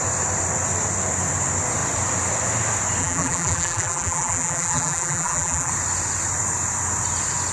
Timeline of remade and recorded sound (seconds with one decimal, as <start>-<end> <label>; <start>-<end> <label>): 0.0-3.0 recorded; 3.0-5.7 remade; 5.7-7.5 recorded